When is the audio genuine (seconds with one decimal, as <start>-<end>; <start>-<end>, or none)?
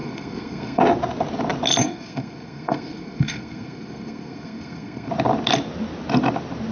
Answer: 0.8-1.8; 5.1-6.7